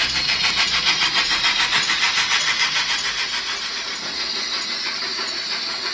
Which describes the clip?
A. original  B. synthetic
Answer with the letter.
A